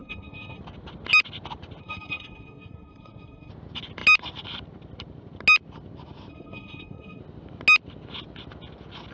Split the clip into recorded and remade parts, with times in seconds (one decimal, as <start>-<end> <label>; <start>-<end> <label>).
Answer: 0.0-0.6 remade; 0.6-1.8 recorded; 1.8-3.5 remade; 3.5-6.3 recorded; 6.3-7.2 remade; 7.2-9.1 recorded